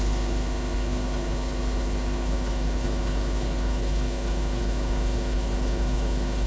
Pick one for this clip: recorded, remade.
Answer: remade